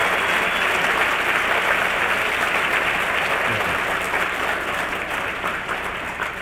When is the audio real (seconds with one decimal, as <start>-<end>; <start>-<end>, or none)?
0.0-3.6